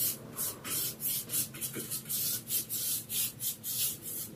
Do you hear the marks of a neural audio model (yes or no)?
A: yes